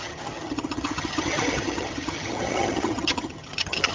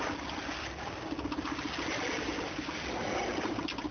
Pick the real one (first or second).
second